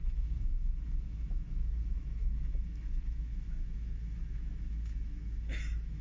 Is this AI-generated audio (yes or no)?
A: yes